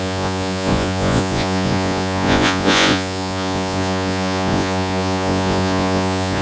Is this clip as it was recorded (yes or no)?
no